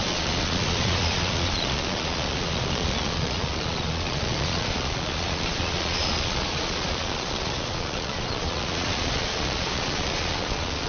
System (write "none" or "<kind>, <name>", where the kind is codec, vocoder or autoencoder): vocoder, Vocos